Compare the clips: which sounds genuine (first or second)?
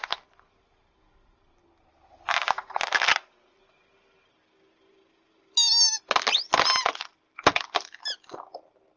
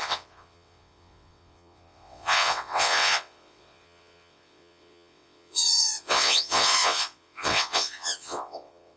first